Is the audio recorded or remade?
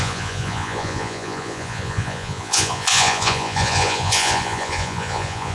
remade